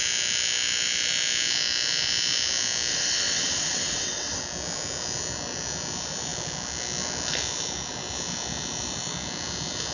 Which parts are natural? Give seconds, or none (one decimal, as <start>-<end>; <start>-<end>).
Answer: 0.0-2.9; 4.4-9.9